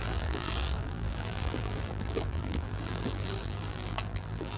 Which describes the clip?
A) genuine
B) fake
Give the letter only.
B